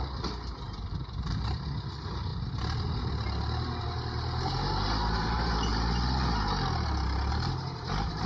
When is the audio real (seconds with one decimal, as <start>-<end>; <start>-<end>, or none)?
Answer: 2.3-3.8; 5.7-7.3